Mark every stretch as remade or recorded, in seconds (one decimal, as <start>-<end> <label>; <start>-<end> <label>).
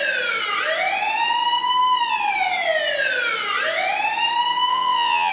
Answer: 0.0-4.7 recorded; 4.7-5.3 remade